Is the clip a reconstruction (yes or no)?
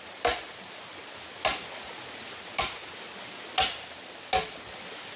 no